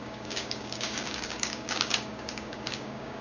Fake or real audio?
fake